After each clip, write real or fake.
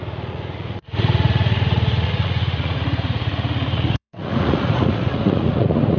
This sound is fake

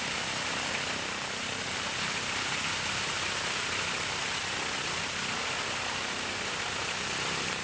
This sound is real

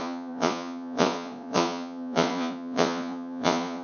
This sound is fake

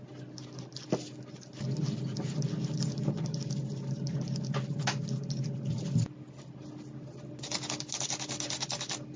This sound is real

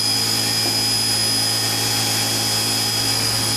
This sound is real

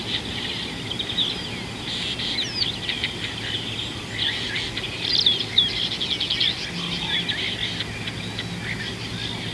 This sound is real